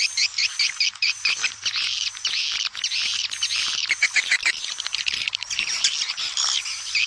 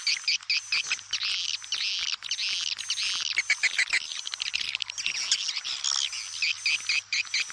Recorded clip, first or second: second